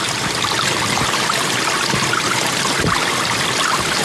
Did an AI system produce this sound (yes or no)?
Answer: no